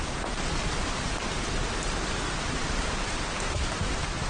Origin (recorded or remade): recorded